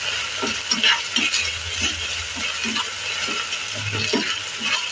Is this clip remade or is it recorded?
recorded